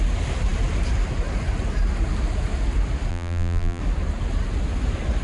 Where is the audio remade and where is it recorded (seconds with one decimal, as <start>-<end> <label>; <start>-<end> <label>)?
0.0-3.1 recorded; 3.1-3.8 remade; 3.8-5.2 recorded